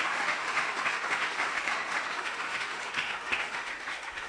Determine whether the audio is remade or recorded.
remade